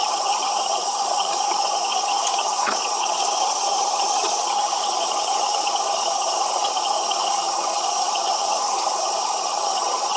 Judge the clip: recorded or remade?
remade